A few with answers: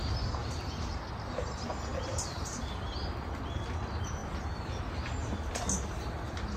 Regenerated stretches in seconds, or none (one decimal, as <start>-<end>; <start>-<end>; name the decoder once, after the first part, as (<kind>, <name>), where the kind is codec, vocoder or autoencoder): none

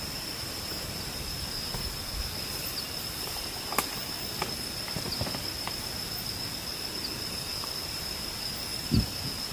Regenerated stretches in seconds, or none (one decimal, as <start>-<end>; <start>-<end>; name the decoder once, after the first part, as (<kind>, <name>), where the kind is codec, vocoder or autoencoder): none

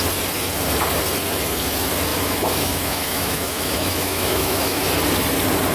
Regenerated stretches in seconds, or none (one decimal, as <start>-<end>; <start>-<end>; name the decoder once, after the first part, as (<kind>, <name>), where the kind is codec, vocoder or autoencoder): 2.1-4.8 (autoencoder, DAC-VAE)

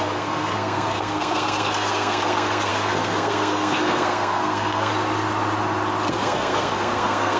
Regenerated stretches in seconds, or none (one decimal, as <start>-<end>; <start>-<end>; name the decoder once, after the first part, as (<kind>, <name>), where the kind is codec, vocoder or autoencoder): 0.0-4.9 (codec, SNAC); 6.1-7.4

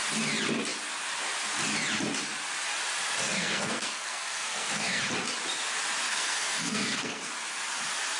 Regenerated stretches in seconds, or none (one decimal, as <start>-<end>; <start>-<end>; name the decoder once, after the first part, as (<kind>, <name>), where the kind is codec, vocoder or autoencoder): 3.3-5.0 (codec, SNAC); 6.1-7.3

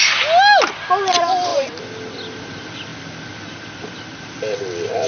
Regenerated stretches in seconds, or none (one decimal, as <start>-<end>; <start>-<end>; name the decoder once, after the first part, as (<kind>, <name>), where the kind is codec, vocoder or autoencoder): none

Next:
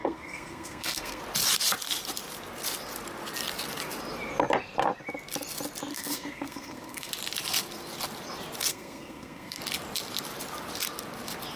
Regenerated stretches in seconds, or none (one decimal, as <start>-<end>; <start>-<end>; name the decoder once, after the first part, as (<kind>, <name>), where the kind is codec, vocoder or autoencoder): 0.0-1.2 (codec, SNAC); 5.9-7.1; 8.7-9.6

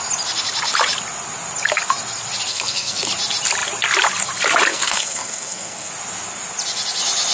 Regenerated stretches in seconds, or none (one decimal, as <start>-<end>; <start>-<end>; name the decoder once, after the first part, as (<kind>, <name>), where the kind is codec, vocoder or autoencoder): 2.5-3.1 (codec, SNAC); 4.7-5.9